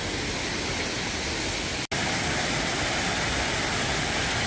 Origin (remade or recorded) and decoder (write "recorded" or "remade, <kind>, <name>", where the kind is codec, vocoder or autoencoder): recorded